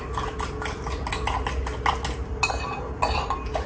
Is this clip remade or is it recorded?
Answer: recorded